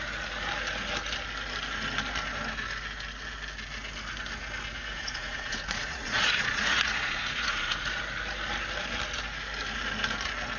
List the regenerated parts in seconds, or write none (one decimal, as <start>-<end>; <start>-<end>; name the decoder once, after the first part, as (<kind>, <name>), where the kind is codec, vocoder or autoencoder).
4.9-8.0 (vocoder, Vocos)